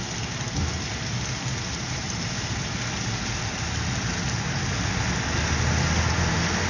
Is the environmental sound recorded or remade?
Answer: recorded